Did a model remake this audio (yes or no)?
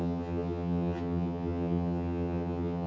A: yes